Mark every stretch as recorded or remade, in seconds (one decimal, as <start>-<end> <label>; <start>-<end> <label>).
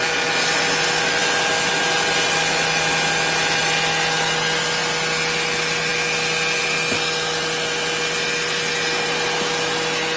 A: 0.0-10.2 recorded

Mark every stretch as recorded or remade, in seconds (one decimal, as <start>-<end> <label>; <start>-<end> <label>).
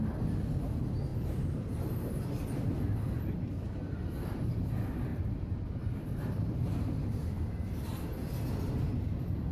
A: 0.0-1.1 recorded; 1.1-1.9 remade; 1.9-5.1 recorded; 5.1-6.8 remade; 6.8-9.5 recorded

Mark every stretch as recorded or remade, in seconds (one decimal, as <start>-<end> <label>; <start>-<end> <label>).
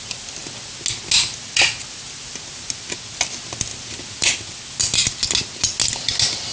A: 0.0-6.5 recorded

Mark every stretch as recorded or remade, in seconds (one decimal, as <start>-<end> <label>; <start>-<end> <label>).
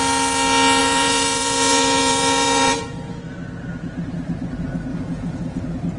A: 0.0-0.8 recorded; 0.8-3.2 remade; 3.2-4.9 recorded; 4.9-5.6 remade; 5.6-6.0 recorded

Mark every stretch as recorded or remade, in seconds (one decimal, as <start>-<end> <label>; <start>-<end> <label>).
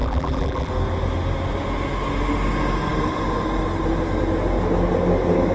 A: 0.0-0.7 remade; 0.7-5.5 recorded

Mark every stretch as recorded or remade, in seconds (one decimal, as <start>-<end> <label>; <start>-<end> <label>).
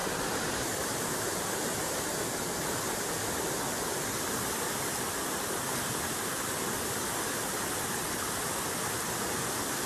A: 0.0-9.9 recorded